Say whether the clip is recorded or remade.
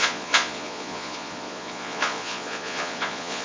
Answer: remade